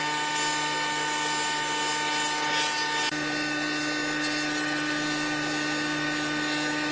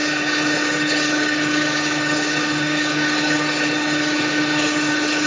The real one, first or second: first